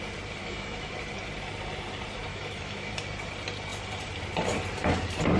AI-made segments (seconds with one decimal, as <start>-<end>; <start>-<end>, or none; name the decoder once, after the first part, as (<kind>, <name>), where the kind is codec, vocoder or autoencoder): 0.4-0.9 (autoencoder, DAC-VAE); 2.3-2.9